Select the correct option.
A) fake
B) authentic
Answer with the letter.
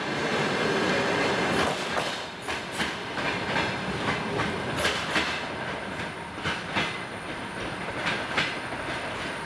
B